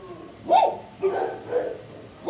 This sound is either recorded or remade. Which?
recorded